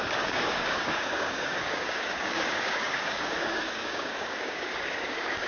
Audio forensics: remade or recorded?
remade